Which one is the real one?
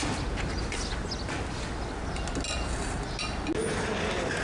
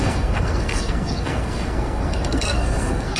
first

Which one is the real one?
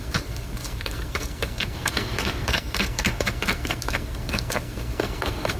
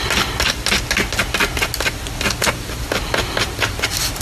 second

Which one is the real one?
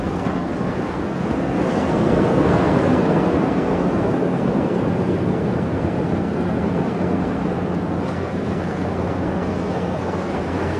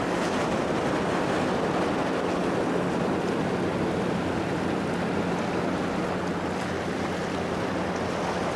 second